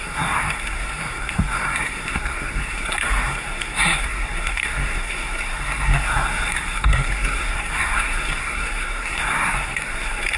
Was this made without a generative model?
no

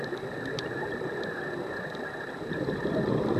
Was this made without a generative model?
yes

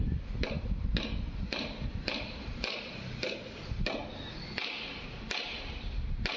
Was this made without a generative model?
yes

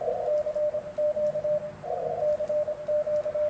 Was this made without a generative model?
yes